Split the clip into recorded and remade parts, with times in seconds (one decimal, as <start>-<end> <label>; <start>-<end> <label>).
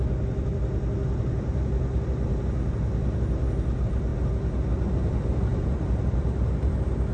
0.0-7.1 recorded